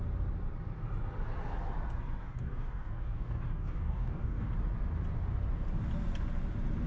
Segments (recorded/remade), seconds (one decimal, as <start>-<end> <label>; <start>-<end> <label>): 0.0-2.2 recorded; 2.2-4.5 remade; 4.5-6.9 recorded